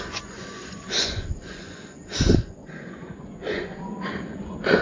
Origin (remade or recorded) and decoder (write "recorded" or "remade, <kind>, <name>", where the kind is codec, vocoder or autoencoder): remade, vocoder, Vocos